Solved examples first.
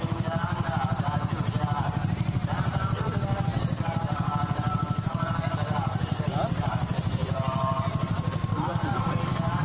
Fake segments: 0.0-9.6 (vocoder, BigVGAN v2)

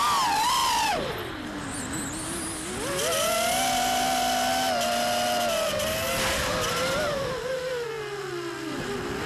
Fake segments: 0.6-1.1 (vocoder, BigVGAN v2)

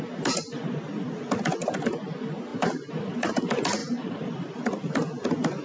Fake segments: 2.5-3.4 (vocoder, BigVGAN v2); 3.8-4.8